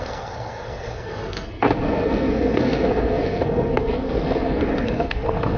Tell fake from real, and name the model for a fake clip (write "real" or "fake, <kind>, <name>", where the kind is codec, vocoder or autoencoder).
fake, codec, SNAC